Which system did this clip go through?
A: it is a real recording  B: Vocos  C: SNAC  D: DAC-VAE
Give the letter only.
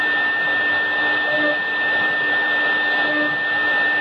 A